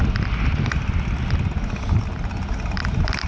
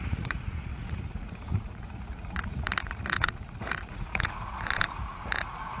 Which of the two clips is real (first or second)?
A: first